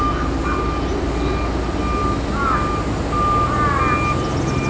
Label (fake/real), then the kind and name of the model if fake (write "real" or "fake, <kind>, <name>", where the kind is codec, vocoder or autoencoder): real